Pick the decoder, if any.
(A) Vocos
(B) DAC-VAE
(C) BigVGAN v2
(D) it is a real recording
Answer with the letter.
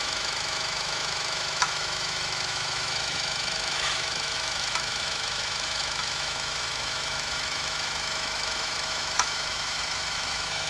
B